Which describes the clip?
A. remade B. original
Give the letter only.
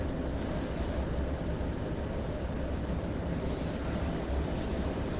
B